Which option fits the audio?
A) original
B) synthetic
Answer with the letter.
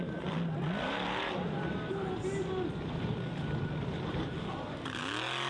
A